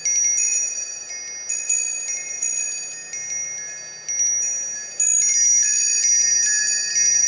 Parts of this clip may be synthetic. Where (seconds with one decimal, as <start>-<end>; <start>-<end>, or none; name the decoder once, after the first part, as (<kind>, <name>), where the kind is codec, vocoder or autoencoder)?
0.5-1.1 (vocoder, BigVGAN v2)